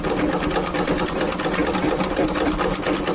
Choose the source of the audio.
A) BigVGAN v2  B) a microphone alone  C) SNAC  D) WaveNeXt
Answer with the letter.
B